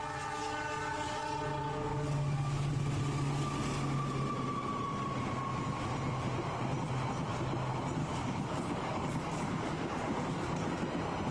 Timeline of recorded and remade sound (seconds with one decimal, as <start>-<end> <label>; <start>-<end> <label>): 0.0-0.4 recorded; 0.4-1.2 remade; 1.2-1.9 recorded; 1.9-2.7 remade; 2.7-8.0 recorded; 8.0-10.7 remade; 10.7-11.3 recorded